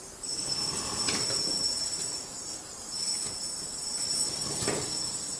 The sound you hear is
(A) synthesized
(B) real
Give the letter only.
A